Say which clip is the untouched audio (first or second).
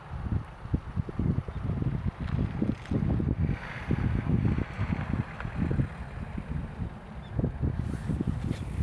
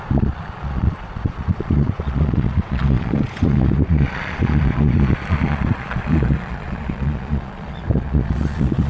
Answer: first